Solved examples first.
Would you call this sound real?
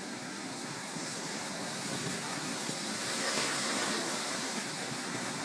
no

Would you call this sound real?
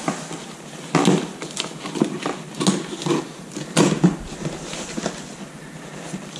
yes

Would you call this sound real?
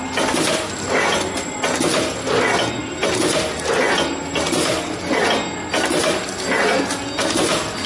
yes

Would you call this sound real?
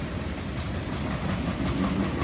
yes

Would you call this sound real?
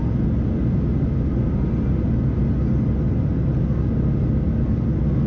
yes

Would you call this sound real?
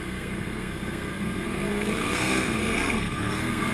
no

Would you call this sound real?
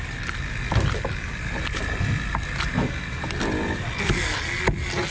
yes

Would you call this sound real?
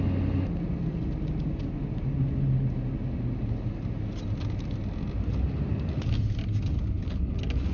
yes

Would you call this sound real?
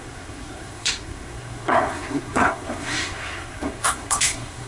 no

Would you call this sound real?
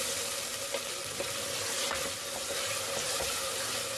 yes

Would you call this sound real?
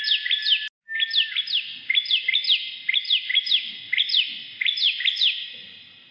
yes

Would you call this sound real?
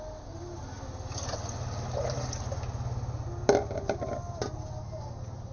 yes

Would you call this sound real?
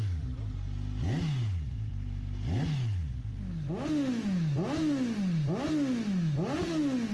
yes